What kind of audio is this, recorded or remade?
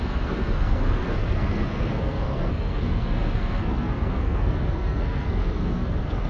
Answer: remade